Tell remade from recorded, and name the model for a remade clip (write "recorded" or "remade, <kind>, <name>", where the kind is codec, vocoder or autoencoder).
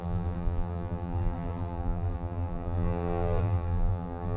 remade, vocoder, BigVGAN v2